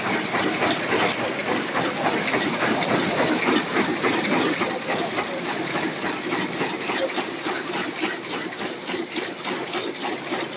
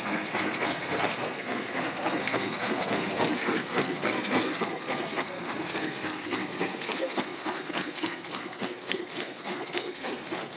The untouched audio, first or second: first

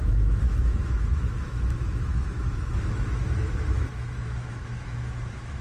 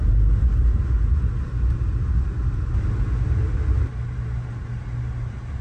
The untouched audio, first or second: second